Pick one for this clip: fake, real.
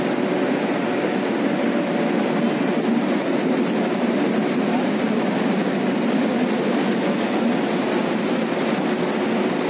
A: real